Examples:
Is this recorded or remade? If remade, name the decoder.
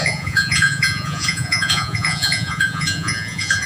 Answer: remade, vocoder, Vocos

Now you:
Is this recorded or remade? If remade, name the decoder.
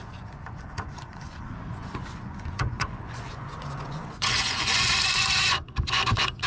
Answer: remade, vocoder, Vocos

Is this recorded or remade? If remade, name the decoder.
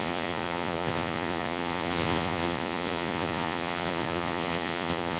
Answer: remade, vocoder, Vocos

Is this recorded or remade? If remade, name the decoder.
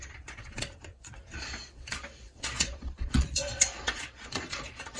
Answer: remade, vocoder, Vocos